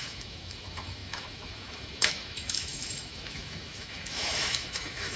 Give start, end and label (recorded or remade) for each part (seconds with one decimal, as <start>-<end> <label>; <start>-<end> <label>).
0.0-5.2 remade